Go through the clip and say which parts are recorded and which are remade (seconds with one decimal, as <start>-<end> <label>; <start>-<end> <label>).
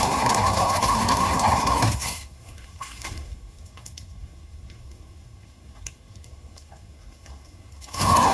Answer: 0.0-8.3 remade